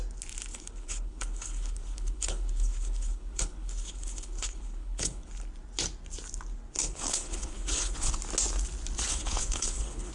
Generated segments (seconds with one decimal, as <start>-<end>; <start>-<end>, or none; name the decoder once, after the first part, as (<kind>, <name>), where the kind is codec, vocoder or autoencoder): 0.5-5.3 (codec, HILCodec); 6.8-8.1; 9.1-10.1